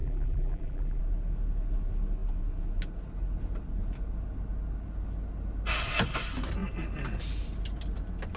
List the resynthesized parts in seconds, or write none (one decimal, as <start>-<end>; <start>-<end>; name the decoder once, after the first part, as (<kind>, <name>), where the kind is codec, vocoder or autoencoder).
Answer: 0.0-1.0 (vocoder, BigVGAN v2)